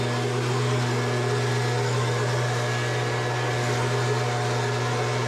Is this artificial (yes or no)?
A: no